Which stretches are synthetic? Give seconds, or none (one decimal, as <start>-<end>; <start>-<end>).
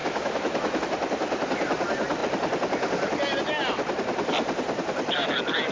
0.0-0.8